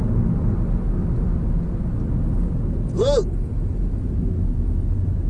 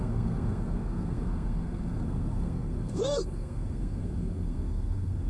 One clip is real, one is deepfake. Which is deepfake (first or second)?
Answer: second